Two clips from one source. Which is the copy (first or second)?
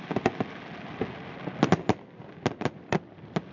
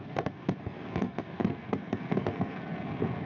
second